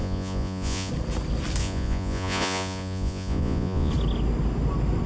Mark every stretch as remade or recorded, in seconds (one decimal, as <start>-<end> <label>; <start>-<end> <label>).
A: 0.0-0.9 remade; 0.9-1.6 recorded; 1.6-3.9 remade; 3.9-5.1 recorded